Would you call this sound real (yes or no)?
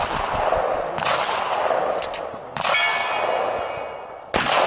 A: yes